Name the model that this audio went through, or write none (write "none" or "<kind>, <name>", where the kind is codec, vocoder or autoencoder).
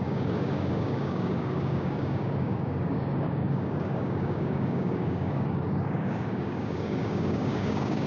codec, DAC